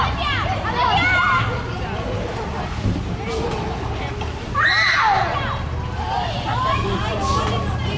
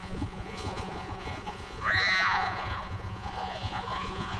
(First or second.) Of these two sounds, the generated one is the second